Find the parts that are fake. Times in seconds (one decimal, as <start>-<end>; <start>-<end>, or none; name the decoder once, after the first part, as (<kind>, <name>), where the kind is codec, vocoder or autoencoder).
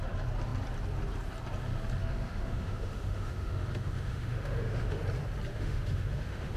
2.0-5.0 (autoencoder, DAC-VAE); 5.5-6.6